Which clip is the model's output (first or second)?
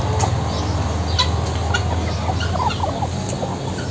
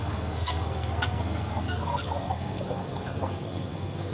second